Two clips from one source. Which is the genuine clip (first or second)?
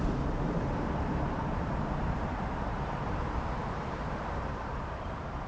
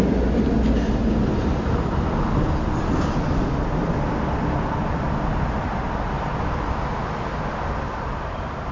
second